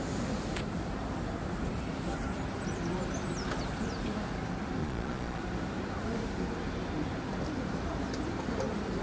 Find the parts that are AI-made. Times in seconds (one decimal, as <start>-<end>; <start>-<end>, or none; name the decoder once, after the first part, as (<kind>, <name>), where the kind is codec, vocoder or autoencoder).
4.8-5.4 (vocoder, Vocos)